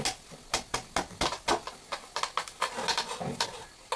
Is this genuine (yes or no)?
yes